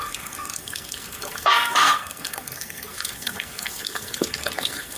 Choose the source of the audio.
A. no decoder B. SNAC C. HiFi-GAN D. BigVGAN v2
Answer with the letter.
B